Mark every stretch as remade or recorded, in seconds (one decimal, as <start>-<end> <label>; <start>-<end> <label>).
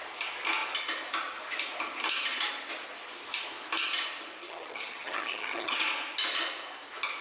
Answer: 0.0-4.4 recorded; 4.4-5.8 remade; 5.8-7.2 recorded